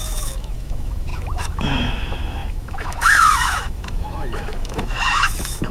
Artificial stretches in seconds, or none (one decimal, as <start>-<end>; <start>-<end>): 0.0-5.7